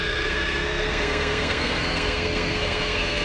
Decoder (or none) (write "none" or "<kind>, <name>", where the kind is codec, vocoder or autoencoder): codec, SNAC